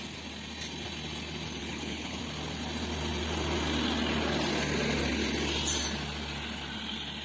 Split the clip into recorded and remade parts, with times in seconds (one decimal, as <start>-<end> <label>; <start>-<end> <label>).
0.0-1.6 recorded; 1.6-2.2 remade; 2.2-7.2 recorded